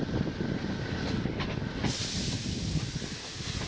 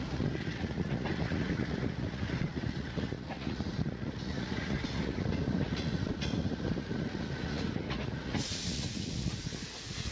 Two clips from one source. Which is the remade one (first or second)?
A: second